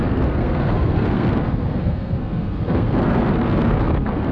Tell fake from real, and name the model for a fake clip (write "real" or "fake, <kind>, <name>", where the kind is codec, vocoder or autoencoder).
fake, codec, SNAC